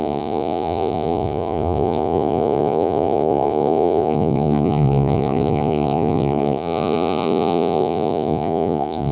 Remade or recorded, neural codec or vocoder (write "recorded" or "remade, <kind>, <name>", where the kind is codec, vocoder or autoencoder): remade, vocoder, Vocos